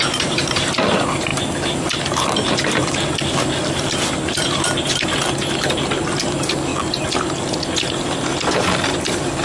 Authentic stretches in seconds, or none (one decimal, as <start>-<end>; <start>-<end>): 0.0-9.4